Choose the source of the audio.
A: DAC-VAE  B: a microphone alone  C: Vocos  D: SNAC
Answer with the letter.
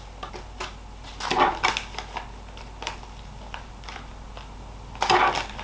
B